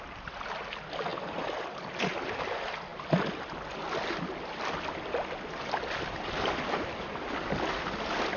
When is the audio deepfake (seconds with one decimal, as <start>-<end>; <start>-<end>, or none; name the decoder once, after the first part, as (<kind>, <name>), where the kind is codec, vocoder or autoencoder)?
none